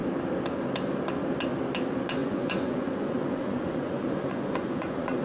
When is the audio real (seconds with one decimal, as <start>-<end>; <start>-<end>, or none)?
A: 0.0-2.2